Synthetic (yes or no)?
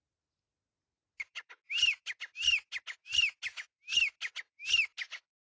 no